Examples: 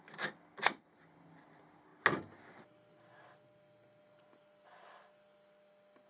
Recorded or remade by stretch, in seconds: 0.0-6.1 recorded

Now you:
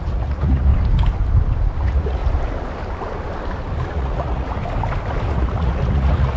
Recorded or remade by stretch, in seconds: 0.0-0.7 remade; 0.7-1.8 recorded; 1.8-2.2 remade; 2.2-3.9 recorded; 3.9-4.6 remade; 4.6-5.3 recorded; 5.3-6.4 remade

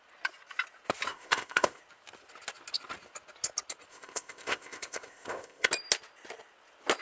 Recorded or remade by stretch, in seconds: 0.0-1.1 recorded; 1.1-1.8 remade; 1.8-3.9 recorded; 3.9-5.7 remade; 5.7-7.0 recorded

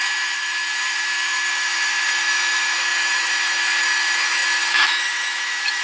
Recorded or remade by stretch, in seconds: 0.0-5.8 remade